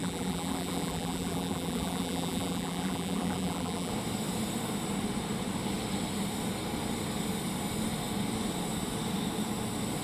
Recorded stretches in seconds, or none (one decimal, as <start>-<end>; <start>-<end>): 3.9-10.0